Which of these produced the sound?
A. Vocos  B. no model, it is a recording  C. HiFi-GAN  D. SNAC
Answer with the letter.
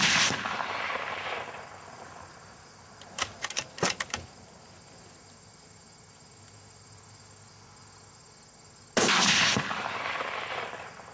B